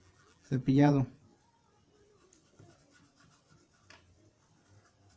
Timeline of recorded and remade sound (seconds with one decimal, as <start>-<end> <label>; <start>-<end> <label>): 0.0-0.9 remade; 0.9-5.2 recorded